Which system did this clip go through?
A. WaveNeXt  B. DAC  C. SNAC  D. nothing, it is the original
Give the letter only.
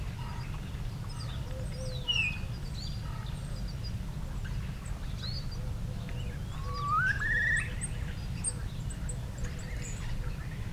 D